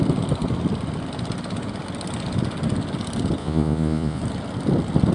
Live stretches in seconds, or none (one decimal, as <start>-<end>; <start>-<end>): 0.0-3.4; 4.2-5.1